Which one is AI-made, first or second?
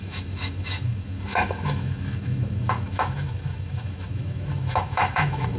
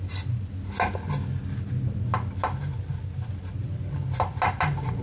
first